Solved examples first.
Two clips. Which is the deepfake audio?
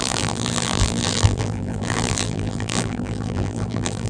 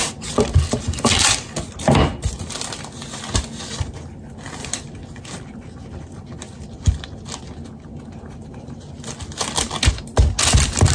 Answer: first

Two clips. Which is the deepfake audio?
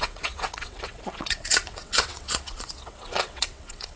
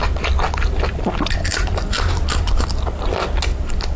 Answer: first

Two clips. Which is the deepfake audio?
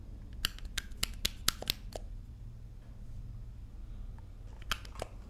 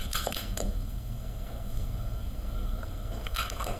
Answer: second